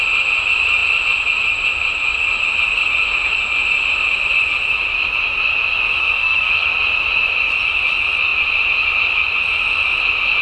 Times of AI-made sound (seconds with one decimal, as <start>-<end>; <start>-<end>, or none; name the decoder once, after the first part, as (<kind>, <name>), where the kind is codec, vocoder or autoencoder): 6.0-6.7 (codec, SNAC)